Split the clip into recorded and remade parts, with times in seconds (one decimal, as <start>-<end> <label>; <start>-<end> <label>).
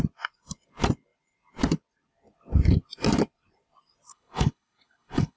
0.0-4.1 recorded; 4.1-5.4 remade